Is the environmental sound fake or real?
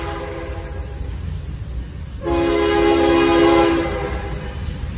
real